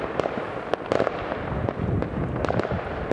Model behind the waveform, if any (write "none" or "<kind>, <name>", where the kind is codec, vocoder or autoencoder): none